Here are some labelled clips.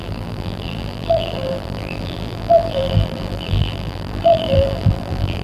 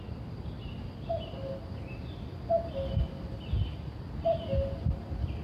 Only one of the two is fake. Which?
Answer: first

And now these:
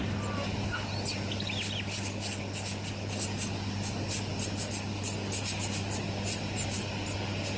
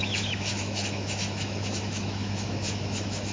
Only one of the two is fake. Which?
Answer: second